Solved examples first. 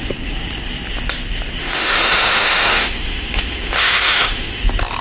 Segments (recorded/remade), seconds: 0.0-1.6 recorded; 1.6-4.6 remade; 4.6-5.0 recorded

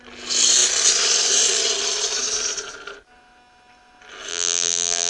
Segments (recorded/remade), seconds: 0.0-4.3 recorded; 4.3-5.1 remade